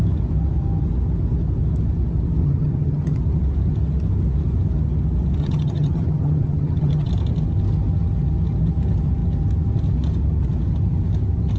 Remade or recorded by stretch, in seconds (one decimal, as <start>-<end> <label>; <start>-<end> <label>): 0.0-2.4 recorded; 2.4-3.2 remade; 3.2-5.4 recorded; 5.4-7.1 remade; 7.1-11.6 recorded